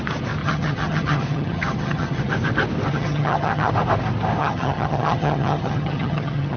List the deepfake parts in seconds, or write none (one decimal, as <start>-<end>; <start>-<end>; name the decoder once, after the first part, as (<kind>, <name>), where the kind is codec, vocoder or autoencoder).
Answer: 0.4-2.3 (vocoder, HiFi-GAN); 2.9-3.7; 4.4-6.6